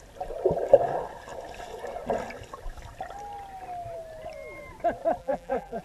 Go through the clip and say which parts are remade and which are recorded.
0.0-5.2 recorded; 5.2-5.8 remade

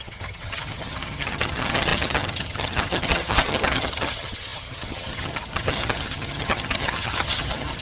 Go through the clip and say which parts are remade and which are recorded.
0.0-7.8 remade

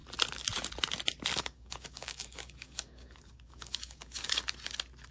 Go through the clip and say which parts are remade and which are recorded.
0.0-1.3 recorded; 1.3-4.4 remade; 4.4-5.1 recorded

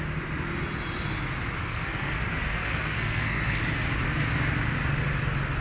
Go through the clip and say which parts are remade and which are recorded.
0.0-1.6 recorded; 1.6-3.6 remade; 3.6-5.6 recorded

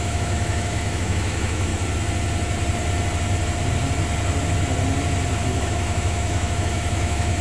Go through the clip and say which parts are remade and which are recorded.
0.0-1.7 remade; 1.7-5.5 recorded; 5.5-7.4 remade

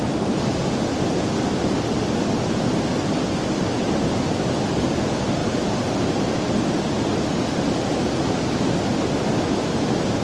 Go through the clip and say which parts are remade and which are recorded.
0.0-10.2 recorded